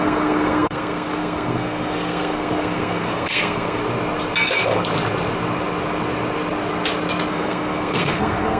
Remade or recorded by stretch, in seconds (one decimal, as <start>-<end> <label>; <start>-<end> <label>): 0.0-3.8 remade; 3.8-7.3 recorded; 7.3-8.6 remade